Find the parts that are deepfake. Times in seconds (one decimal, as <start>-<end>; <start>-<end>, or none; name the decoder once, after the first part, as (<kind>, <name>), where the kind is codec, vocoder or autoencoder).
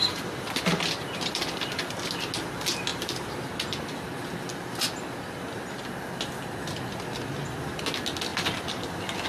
0.0-1.8 (vocoder, BigVGAN v2); 8.3-9.3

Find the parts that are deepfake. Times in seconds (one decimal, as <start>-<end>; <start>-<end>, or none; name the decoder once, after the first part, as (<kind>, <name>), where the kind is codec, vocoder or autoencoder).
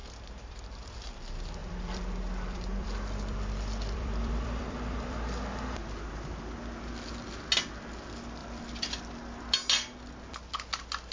0.0-1.1 (vocoder, BigVGAN v2); 1.6-5.8; 8.4-9.0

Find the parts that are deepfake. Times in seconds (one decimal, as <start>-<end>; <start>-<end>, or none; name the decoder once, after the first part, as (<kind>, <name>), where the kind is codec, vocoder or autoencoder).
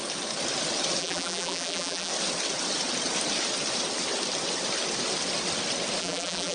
1.0-2.1 (vocoder, BigVGAN v2); 6.0-6.5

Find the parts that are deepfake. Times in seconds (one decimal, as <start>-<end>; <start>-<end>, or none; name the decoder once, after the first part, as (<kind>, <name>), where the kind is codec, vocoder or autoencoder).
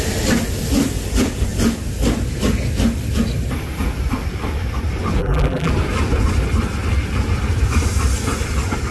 5.2-5.7 (vocoder, BigVGAN v2)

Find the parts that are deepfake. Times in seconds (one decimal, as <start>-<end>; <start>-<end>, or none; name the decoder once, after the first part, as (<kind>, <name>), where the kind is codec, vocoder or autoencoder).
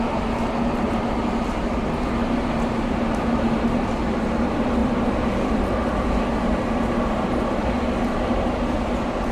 2.2-3.5 (vocoder, BigVGAN v2); 4.8-8.4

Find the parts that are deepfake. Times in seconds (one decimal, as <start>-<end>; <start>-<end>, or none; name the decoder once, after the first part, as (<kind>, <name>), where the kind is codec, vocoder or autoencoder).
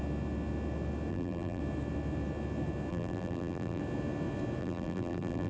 1.1-1.6 (vocoder, BigVGAN v2); 2.9-3.8; 4.6-5.5